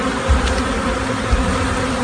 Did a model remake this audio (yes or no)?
no